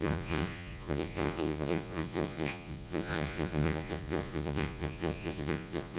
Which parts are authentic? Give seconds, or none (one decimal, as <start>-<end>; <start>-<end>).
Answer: none